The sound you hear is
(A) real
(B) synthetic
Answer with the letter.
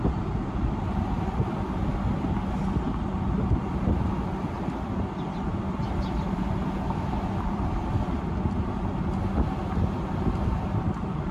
A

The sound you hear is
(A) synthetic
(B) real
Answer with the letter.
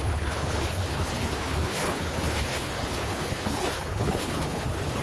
A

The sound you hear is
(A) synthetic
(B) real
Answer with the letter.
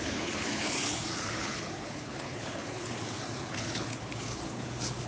A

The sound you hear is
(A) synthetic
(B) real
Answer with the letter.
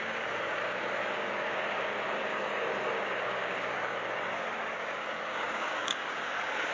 A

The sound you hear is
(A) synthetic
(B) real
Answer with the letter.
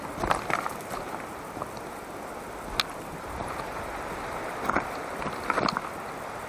B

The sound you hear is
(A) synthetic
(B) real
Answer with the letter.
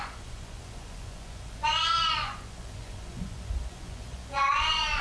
A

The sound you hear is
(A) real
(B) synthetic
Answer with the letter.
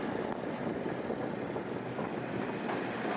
A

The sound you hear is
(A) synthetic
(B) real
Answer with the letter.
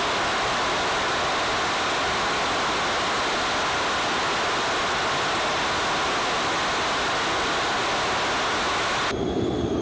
B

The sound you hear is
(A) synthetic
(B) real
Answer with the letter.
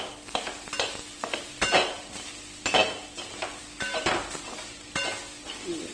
B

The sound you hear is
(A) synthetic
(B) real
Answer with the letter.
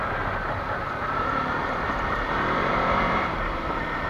A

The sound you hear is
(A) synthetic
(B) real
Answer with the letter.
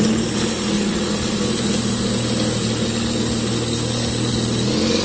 B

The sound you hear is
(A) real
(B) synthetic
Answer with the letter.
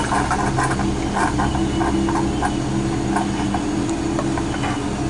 A